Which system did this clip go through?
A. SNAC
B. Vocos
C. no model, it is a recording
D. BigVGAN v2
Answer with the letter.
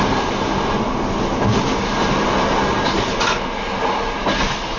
C